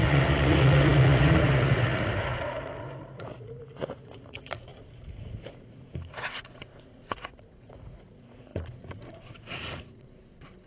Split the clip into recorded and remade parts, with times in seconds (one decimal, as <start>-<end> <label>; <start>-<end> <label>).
0.0-10.7 remade